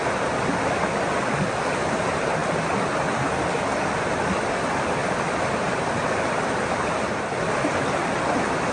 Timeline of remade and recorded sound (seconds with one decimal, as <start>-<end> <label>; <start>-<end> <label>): 0.0-0.8 remade; 0.8-5.0 recorded; 5.0-7.6 remade; 7.6-8.7 recorded